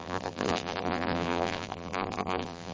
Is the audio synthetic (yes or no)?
yes